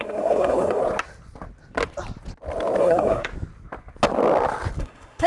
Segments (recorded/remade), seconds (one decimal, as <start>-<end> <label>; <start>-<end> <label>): 0.0-0.8 remade; 0.8-2.8 recorded; 2.8-3.3 remade; 3.3-4.8 recorded; 4.8-5.3 remade